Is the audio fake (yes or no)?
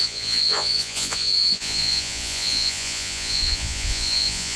yes